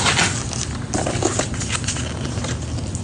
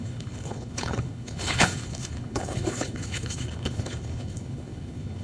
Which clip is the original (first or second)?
first